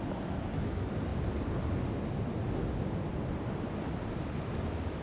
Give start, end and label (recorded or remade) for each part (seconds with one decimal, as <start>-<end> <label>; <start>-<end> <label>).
0.0-5.0 recorded